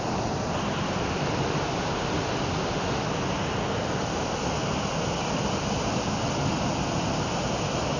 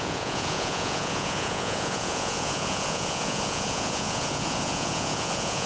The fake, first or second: second